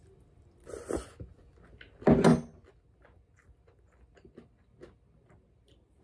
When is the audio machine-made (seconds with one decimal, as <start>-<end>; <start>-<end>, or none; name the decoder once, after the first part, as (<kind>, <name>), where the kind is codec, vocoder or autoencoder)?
none